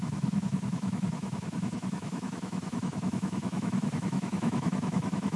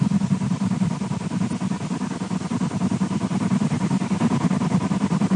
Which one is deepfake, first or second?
first